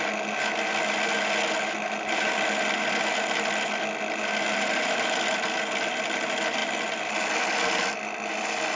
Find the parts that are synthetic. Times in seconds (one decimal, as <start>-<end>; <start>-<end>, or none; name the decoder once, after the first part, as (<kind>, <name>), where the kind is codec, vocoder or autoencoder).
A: none